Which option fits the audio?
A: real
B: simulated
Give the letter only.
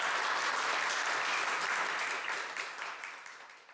B